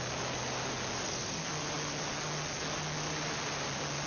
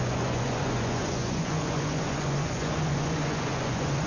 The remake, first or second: second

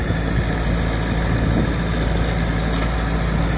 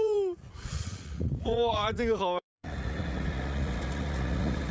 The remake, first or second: second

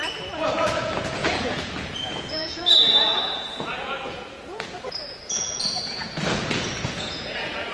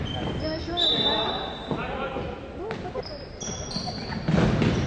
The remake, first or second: first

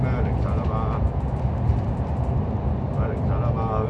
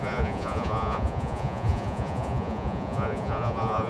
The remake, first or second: second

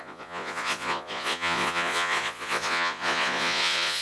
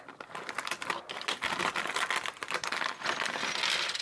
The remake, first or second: first